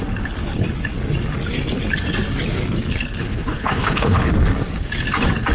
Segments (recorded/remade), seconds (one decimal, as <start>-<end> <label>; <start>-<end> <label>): 0.0-3.2 recorded; 3.2-4.3 remade; 4.3-5.5 recorded